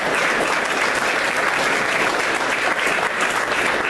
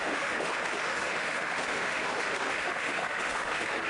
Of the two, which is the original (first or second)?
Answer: first